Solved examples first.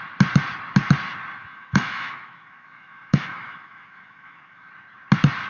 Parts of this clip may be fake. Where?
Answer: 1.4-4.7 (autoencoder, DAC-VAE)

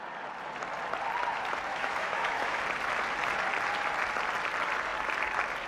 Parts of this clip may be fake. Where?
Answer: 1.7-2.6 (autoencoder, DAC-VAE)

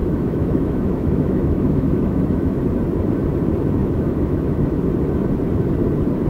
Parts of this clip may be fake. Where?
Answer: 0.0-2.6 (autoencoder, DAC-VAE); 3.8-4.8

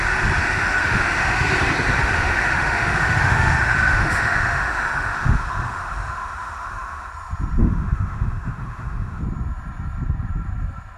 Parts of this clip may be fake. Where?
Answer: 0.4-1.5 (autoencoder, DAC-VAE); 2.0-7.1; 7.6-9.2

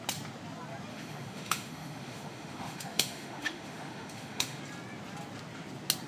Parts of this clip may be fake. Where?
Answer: 0.9-4.6 (autoencoder, DAC-VAE)

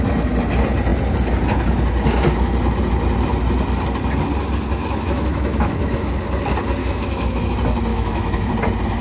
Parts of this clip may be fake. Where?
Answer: 4.8-6.1 (autoencoder, DAC-VAE); 6.8-7.5; 7.9-8.5

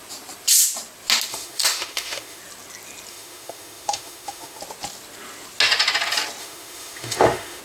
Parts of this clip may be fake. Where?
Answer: 1.3-2.4 (autoencoder, DAC-VAE); 3.1-4.6; 6.4-7.6

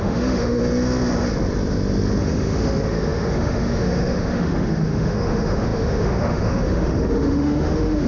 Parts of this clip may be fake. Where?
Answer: 0.0-0.6 (autoencoder, DAC-VAE); 2.2-8.1